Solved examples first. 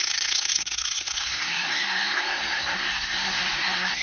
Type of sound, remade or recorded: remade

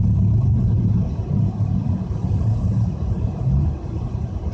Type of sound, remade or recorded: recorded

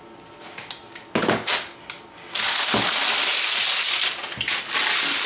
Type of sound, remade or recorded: recorded